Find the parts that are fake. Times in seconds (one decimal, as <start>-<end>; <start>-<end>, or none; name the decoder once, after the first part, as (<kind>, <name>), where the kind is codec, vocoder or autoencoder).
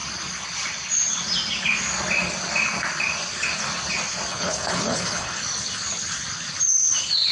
4.3-5.4 (codec, HILCodec)